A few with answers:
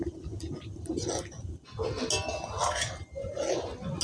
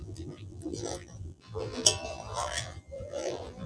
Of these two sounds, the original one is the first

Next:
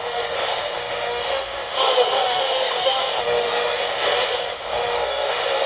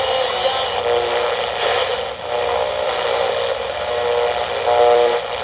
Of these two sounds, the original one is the second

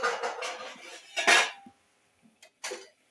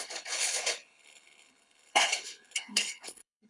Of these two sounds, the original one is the first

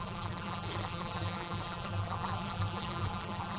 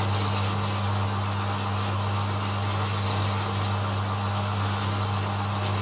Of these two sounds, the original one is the second